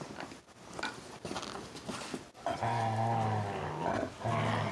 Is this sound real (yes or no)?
yes